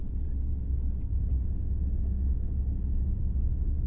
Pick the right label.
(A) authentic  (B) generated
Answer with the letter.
A